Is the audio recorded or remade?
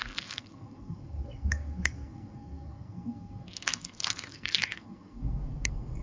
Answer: remade